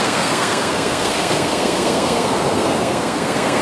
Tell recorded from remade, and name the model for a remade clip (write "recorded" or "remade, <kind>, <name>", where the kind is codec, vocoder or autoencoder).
remade, codec, SNAC